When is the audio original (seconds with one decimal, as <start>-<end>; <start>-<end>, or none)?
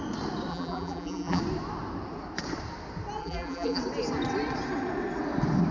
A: 0.0-0.5; 1.4-3.2; 3.8-5.7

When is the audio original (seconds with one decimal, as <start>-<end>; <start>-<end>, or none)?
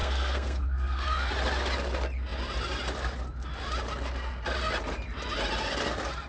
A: 1.3-6.3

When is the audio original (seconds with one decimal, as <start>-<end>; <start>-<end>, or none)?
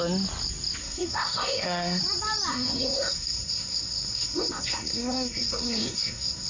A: 0.0-0.8; 2.0-2.5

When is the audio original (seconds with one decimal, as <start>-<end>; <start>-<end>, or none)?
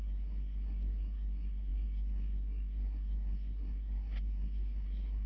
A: none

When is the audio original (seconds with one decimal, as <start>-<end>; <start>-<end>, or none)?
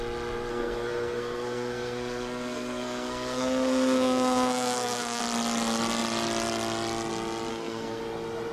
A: 0.0-0.5; 5.2-7.5; 8.0-8.5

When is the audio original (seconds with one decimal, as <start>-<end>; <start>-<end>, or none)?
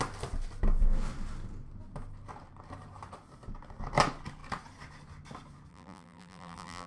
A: 0.0-5.7